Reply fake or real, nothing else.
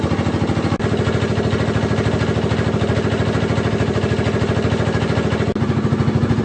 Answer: real